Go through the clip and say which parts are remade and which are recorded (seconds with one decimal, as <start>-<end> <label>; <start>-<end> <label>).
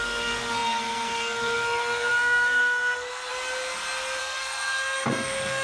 0.0-3.3 remade; 3.3-4.2 recorded; 4.2-5.6 remade